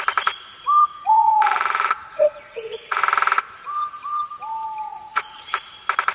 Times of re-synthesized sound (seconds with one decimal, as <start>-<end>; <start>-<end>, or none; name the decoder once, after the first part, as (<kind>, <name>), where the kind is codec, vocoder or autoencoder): 0.9-3.0 (vocoder, Vocos); 4.9-5.6